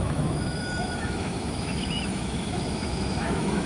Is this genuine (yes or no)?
no